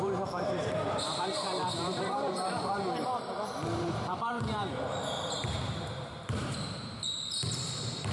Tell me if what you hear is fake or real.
fake